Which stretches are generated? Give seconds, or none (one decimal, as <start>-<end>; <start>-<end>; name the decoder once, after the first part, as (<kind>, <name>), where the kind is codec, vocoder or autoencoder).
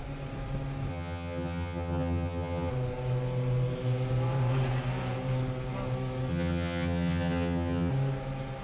0.9-2.7 (vocoder, HiFi-GAN); 6.3-7.9